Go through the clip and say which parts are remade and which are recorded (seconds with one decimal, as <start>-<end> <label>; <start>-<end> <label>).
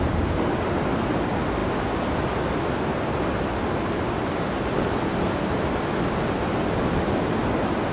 0.0-7.9 recorded